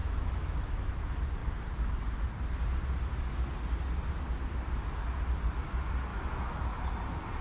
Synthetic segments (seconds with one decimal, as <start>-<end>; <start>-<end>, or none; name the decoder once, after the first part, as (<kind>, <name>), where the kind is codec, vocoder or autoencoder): 0.0-0.9 (autoencoder, DAC-VAE); 6.1-6.9